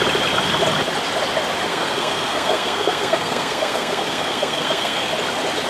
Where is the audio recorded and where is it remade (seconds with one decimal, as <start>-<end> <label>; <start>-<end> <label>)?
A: 0.0-1.7 recorded; 1.7-5.1 remade; 5.1-5.7 recorded